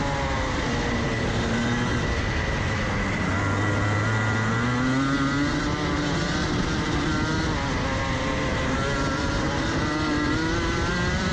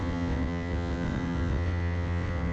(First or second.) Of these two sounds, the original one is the first